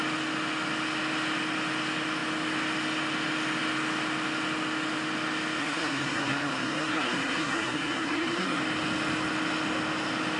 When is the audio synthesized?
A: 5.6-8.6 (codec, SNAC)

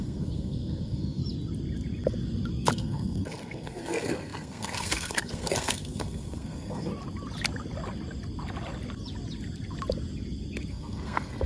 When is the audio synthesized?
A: 0.0-1.2 (codec, SNAC); 2.7-6.9; 10.7-11.5